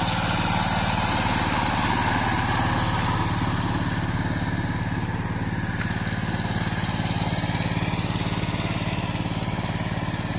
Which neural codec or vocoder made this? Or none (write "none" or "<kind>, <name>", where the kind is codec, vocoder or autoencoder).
none